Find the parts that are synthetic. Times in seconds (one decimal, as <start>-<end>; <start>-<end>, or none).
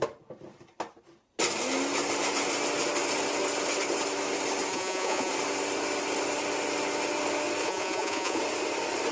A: 4.7-5.3; 7.6-8.4